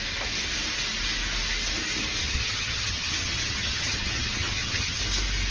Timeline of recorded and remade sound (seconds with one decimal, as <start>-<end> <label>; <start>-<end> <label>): 0.0-2.2 recorded; 2.2-5.0 remade; 5.0-5.5 recorded